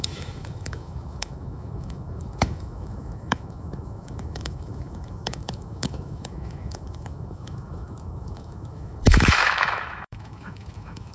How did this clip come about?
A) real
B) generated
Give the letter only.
B